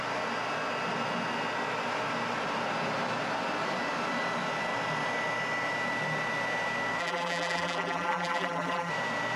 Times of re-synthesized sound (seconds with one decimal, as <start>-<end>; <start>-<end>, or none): 7.0-8.9